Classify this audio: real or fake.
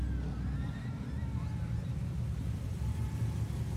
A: fake